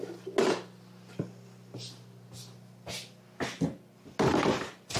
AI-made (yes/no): no